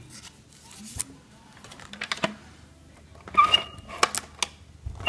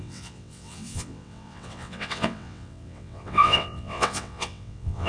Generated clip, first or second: second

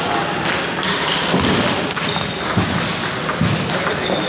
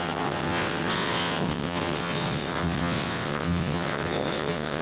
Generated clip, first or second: second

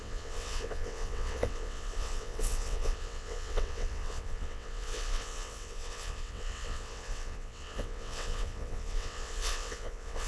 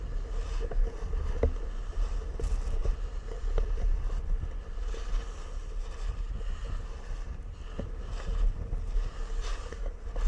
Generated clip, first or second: first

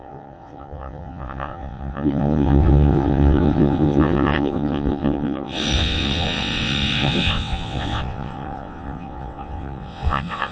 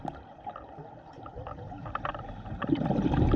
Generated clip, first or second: first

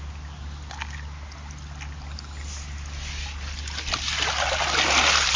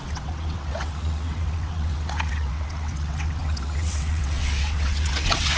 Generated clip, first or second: second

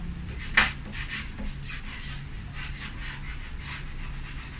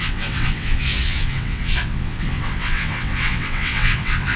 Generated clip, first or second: second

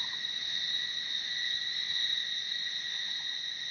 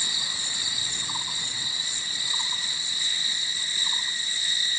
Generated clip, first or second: second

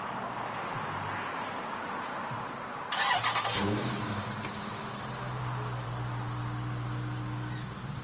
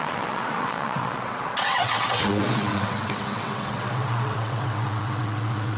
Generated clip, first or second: second